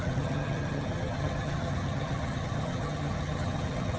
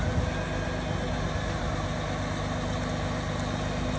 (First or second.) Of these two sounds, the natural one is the second